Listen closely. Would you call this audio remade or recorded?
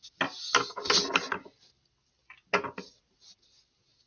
recorded